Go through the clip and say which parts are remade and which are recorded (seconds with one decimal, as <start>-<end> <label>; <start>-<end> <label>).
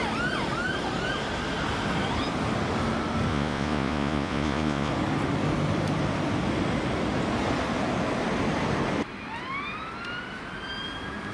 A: 0.0-3.3 recorded; 3.3-4.9 remade; 4.9-11.3 recorded